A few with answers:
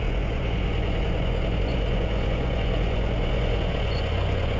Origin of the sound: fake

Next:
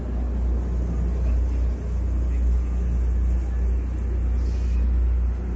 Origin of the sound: real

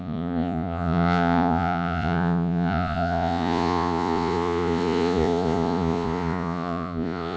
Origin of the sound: fake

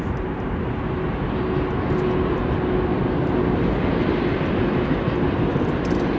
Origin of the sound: real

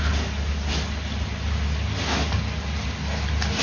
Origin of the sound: real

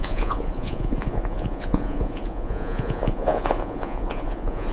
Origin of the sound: fake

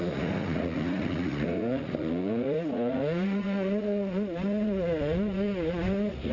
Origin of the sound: fake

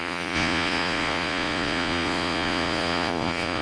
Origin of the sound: fake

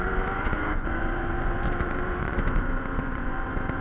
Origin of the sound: fake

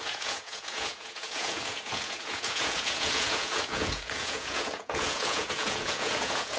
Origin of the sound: fake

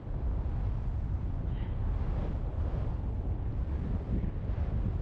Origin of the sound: real